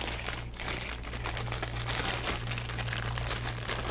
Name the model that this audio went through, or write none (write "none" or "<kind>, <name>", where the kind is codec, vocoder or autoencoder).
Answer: none